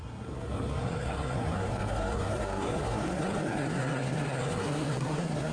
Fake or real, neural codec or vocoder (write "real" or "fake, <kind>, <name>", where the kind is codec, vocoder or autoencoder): fake, codec, SNAC